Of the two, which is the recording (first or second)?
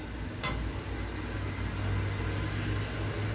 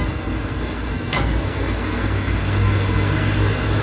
first